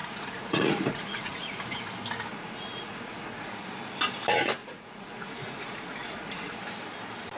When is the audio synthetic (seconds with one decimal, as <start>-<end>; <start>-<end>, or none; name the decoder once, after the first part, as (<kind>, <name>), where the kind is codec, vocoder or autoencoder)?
0.0-1.8 (vocoder, Vocos); 2.3-3.5; 4.6-6.6